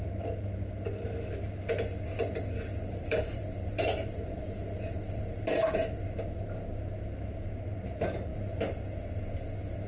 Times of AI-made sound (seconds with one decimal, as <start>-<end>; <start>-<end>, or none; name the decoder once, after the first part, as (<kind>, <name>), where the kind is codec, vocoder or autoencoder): 2.7-4.3 (vocoder, BigVGAN v2)